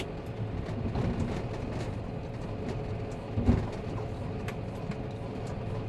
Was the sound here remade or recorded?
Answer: recorded